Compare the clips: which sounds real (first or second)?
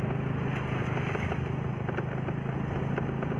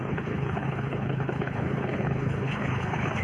first